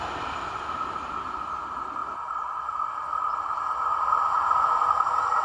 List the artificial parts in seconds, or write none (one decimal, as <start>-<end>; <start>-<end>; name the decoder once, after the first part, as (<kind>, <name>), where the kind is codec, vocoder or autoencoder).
none